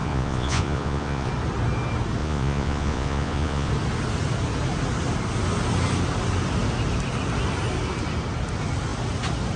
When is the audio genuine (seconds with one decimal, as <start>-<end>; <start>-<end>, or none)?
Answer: 1.3-2.2; 3.7-9.6